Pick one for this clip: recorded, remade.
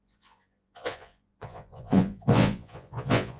remade